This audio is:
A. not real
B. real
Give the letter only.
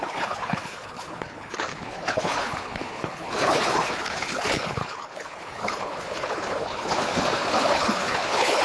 A